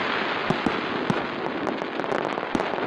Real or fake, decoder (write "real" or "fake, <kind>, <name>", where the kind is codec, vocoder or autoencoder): real